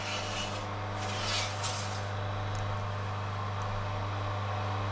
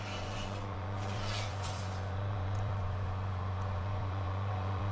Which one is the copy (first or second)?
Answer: second